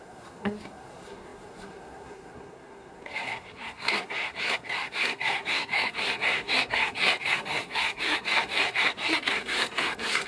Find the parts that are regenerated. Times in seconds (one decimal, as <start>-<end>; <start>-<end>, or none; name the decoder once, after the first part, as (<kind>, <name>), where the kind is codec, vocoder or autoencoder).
0.0-10.3 (codec, SNAC)